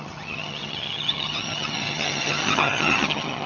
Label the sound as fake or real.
fake